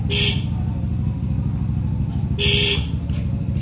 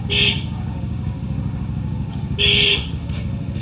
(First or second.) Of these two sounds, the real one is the first